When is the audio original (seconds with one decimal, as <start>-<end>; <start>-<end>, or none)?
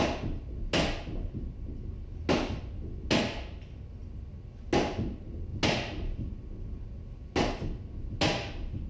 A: 0.0-8.9